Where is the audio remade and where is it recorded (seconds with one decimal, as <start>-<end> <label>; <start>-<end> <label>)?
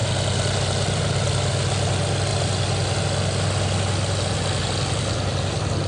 0.0-5.9 recorded